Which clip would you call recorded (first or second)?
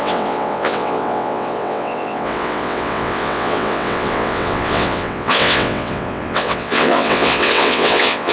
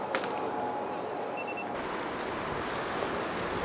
second